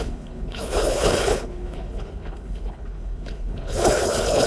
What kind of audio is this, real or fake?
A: fake